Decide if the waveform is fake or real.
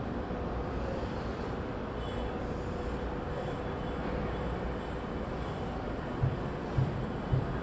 real